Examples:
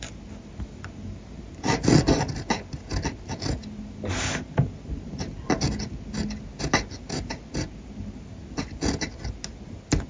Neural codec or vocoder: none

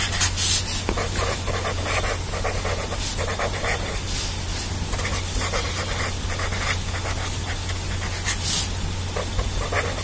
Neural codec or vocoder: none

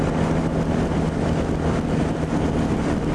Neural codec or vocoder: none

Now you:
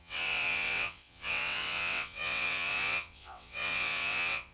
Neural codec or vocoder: vocoder, WaveNeXt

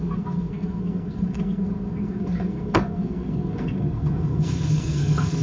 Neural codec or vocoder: codec, SNAC